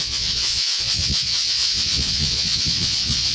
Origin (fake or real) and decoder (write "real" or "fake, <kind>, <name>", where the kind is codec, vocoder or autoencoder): fake, vocoder, Vocos